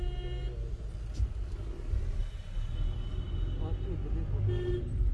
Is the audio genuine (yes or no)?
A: yes